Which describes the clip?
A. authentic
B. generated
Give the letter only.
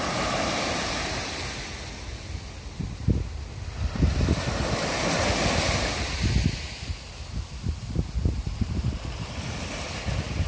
A